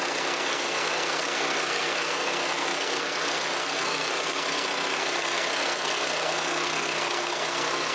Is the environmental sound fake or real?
fake